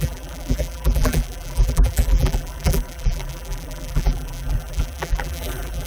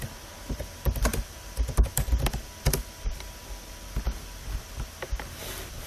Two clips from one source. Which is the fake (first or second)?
first